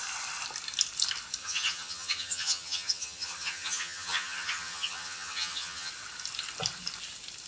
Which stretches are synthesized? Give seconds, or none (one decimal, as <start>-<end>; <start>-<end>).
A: 1.4-5.9